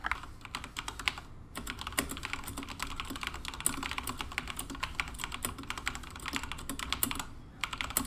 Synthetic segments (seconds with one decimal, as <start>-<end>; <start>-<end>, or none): none